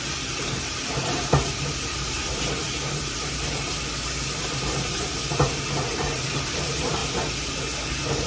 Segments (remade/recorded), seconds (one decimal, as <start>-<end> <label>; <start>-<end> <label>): 0.0-7.0 remade; 7.0-7.9 recorded; 7.9-8.3 remade